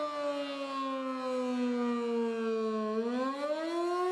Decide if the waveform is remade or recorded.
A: recorded